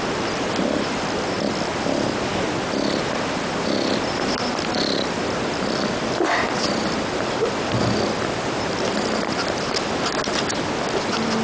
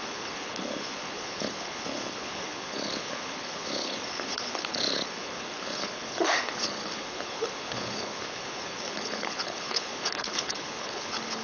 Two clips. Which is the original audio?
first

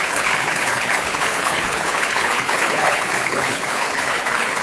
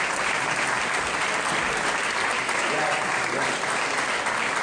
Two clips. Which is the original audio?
second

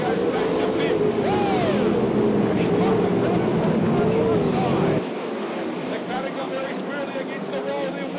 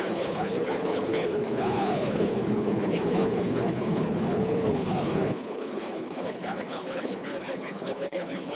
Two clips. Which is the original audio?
first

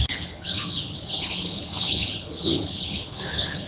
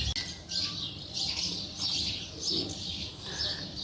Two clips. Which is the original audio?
second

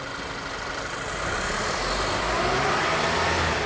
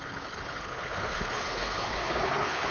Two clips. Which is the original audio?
first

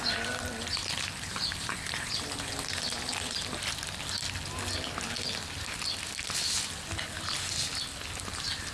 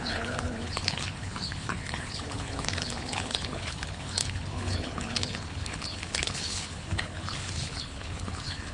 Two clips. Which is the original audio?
first